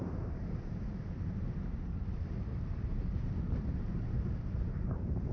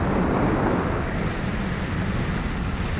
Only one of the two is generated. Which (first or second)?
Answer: first